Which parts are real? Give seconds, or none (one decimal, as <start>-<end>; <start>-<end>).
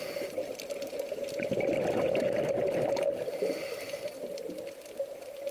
0.0-5.5